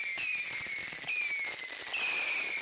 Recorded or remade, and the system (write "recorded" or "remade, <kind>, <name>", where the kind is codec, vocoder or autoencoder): recorded